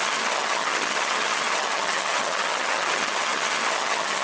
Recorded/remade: remade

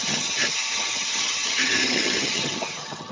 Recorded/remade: remade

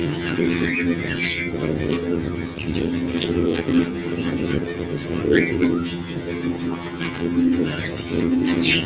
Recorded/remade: remade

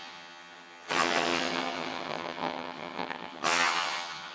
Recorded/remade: remade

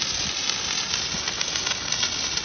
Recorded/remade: recorded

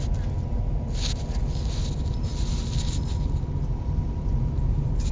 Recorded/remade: recorded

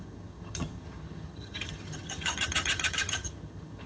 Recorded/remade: remade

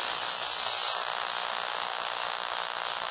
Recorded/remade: recorded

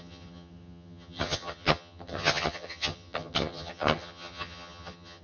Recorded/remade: remade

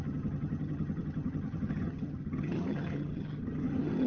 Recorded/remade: remade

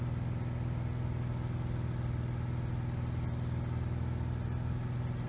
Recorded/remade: recorded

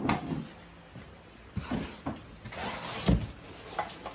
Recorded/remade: recorded